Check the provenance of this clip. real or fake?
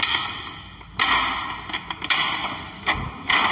real